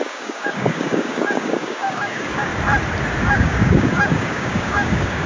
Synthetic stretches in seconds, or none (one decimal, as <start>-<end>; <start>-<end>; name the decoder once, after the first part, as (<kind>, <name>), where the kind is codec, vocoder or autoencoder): 0.0-2.5 (codec, DAC); 3.2-5.3